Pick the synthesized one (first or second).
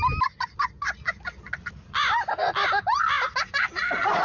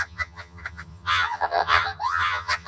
second